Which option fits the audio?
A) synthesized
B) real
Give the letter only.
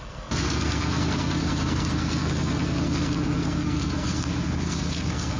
A